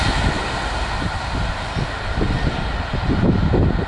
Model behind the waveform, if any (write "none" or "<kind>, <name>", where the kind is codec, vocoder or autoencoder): none